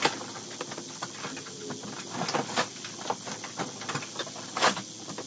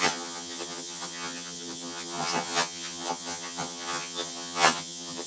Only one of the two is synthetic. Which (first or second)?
second